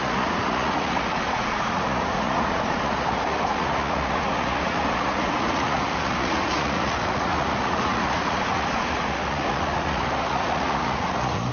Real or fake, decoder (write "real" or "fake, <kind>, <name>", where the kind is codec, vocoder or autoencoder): fake, vocoder, Vocos